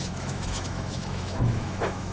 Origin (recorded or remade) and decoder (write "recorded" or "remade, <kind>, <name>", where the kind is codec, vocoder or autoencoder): remade, autoencoder, DAC-VAE